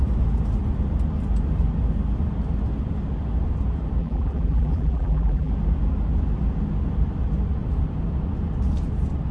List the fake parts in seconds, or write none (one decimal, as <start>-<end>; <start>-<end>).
4.0-5.5